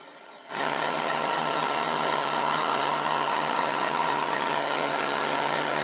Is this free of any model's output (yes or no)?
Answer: no